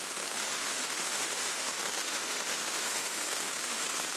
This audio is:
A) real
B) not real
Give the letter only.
B